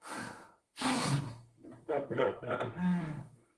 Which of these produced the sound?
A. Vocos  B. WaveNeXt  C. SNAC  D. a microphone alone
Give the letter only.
C